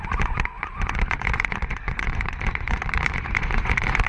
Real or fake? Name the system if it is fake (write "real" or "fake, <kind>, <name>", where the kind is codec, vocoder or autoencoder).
fake, vocoder, Vocos